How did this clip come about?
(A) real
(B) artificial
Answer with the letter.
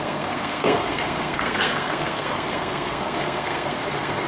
B